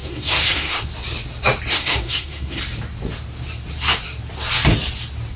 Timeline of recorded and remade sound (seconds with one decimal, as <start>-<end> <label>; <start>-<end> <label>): 0.0-0.9 remade; 0.9-1.7 recorded; 1.7-2.6 remade; 2.6-5.4 recorded